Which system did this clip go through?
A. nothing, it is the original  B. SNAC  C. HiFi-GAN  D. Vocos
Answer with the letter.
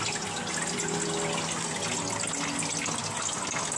A